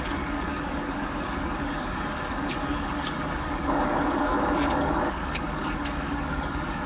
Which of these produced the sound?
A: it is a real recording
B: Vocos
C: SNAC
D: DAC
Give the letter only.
D